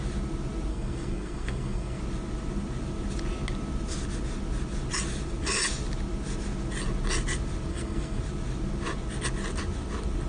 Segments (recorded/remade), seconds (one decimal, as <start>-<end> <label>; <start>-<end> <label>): 0.0-0.7 recorded; 0.7-2.0 remade; 2.0-7.7 recorded; 7.7-8.2 remade; 8.2-10.3 recorded